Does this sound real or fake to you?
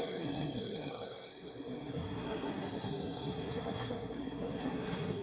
fake